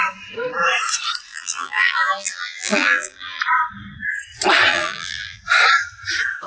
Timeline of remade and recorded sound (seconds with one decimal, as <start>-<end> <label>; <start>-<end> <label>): 0.0-1.3 recorded; 1.3-3.4 remade; 3.4-4.7 recorded; 4.7-5.4 remade; 5.4-6.5 recorded